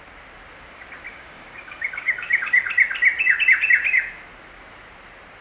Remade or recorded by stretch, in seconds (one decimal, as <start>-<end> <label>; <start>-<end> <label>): 0.0-1.1 recorded; 1.1-2.7 remade; 2.7-5.4 recorded